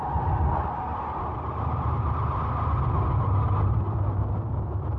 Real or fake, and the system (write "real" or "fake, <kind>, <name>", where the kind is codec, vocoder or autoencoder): real